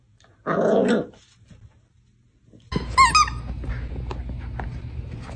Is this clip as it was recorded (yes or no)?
yes